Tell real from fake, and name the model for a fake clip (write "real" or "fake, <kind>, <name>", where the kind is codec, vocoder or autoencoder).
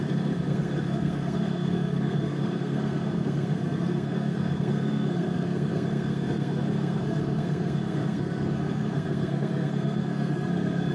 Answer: fake, codec, SNAC